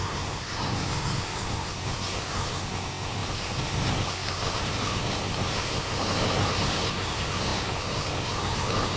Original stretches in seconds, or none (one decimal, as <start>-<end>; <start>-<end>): none